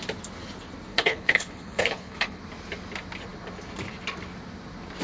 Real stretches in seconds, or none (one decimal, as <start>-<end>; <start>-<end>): 0.0-0.9; 2.4-5.0